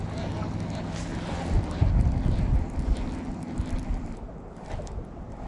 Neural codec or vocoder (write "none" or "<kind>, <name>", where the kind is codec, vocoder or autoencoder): none